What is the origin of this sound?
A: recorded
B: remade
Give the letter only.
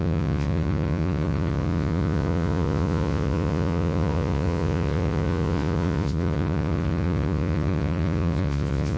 B